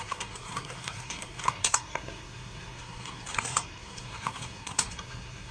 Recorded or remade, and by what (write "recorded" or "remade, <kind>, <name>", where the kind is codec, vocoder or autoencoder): remade, codec, SNAC